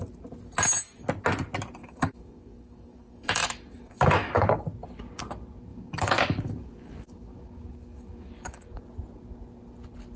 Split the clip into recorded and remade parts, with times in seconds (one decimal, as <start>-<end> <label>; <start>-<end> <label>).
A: 0.0-1.8 recorded; 1.8-4.6 remade; 4.6-5.7 recorded; 5.7-8.8 remade; 8.8-10.2 recorded